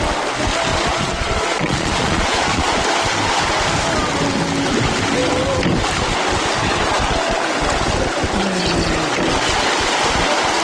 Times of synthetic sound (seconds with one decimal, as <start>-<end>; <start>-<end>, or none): 0.7-2.8